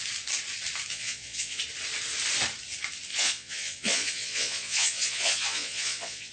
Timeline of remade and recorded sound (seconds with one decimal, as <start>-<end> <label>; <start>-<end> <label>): 0.0-0.9 recorded; 0.9-1.6 remade; 1.6-3.1 recorded; 3.1-6.3 remade